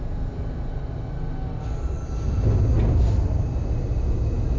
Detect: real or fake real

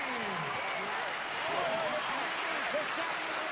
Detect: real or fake real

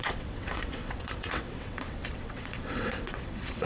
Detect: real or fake fake